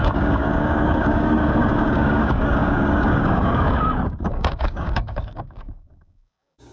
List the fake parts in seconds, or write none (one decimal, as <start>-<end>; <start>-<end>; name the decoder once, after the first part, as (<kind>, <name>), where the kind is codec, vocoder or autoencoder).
0.0-6.7 (codec, DAC)